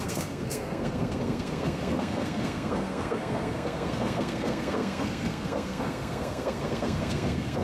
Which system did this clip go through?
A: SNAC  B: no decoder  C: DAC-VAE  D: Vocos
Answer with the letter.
A